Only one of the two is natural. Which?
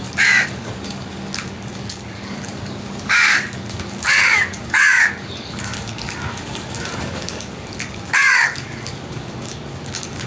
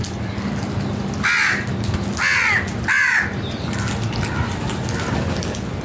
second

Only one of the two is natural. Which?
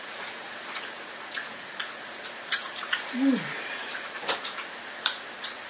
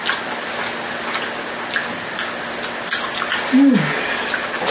second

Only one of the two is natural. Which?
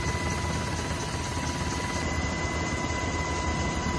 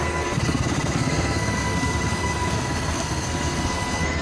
first